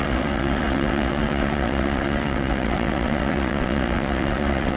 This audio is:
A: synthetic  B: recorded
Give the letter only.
A